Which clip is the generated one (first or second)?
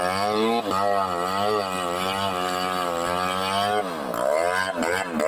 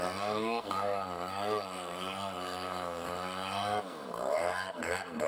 second